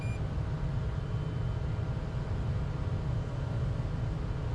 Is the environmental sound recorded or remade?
recorded